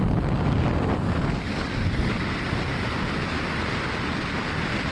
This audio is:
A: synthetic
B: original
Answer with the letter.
B